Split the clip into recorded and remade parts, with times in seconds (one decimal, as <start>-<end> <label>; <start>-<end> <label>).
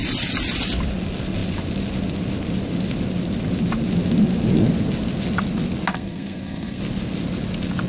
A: 0.0-5.9 recorded; 5.9-6.8 remade; 6.8-7.9 recorded